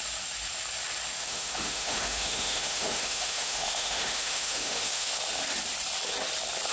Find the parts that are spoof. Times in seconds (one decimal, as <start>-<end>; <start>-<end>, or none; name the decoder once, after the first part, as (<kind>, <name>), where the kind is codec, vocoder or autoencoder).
1.2-5.2 (autoencoder, DAC-VAE)